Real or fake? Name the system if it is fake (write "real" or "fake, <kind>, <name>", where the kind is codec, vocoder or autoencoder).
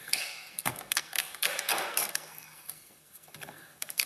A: fake, codec, SNAC